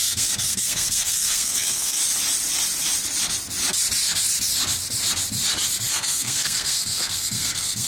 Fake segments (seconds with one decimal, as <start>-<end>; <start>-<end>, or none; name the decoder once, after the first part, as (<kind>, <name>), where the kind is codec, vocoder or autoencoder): 0.0-2.0 (codec, SNAC); 5.9-7.9